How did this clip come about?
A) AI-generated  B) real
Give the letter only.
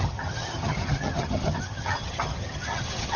A